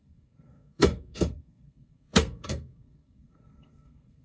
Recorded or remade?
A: remade